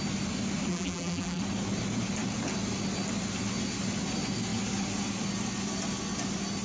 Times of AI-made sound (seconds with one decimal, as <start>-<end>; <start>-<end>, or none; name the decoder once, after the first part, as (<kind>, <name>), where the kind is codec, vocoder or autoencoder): 0.7-1.4 (vocoder, BigVGAN v2)